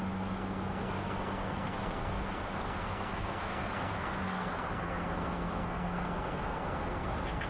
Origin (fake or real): fake